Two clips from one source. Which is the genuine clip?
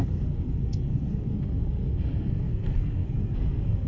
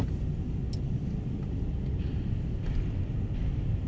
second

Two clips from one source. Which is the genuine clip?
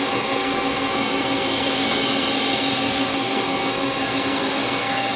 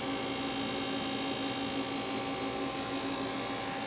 second